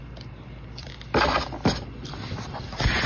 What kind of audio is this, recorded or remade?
recorded